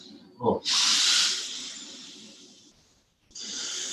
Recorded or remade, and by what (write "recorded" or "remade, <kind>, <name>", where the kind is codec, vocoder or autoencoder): recorded